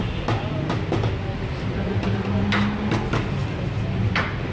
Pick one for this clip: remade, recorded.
recorded